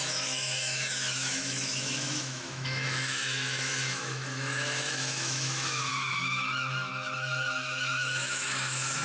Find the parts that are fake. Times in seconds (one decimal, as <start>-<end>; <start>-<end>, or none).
0.0-9.0